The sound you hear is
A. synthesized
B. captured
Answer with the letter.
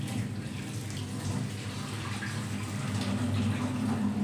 B